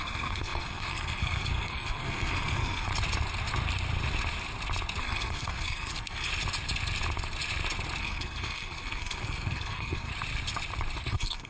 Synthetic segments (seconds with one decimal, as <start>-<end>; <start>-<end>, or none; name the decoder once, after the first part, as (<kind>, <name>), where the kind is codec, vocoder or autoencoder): 0.0-2.9 (codec, SNAC); 5.0-6.3; 8.0-10.1; 11.1-11.5